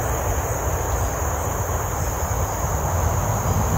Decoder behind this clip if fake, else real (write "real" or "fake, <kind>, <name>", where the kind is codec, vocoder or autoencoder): real